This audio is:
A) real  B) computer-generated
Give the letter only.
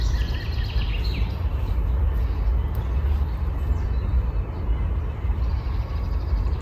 A